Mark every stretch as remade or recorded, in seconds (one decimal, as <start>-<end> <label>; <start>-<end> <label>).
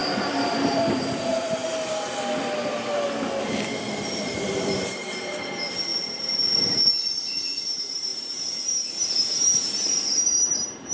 0.0-1.6 remade; 1.6-4.0 recorded; 4.0-10.9 remade